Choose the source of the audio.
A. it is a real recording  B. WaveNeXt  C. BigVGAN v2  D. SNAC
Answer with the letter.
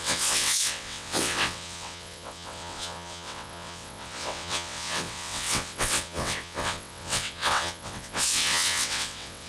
B